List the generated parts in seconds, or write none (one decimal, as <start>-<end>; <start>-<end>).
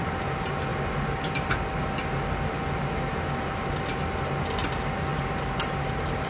none